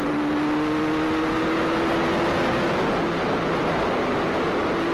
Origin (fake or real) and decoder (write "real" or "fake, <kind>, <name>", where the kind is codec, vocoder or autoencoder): real